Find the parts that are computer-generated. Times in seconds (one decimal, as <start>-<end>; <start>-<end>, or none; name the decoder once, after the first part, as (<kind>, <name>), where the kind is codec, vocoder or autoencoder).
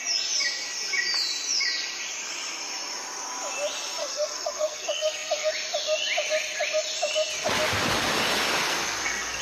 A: 4.0-5.5 (codec, SNAC); 8.6-9.4